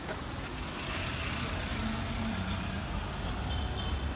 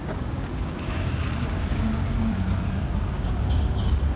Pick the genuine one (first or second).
first